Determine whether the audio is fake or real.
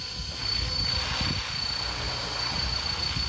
real